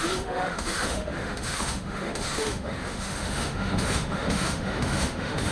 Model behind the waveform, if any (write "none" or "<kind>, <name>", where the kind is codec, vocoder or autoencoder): autoencoder, DAC-VAE